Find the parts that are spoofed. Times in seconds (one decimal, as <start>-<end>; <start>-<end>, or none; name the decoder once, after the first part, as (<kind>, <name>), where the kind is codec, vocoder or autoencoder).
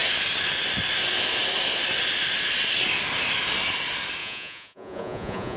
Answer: 4.2-5.6 (vocoder, Vocos)